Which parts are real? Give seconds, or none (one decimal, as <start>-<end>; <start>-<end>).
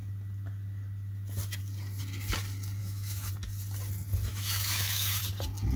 0.0-2.8; 3.3-4.3; 5.2-5.8